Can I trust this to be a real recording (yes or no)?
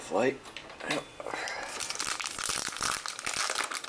yes